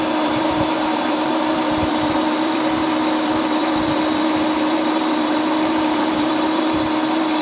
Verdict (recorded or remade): remade